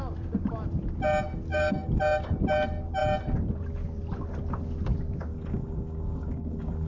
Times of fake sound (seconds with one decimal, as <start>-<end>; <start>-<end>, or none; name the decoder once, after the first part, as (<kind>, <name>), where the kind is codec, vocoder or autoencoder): 1.5-2.0 (codec, DAC); 5.3-6.9